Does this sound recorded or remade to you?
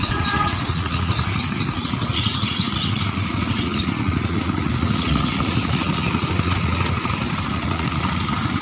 remade